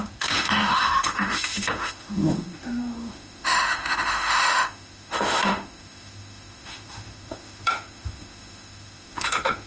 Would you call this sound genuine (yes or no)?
no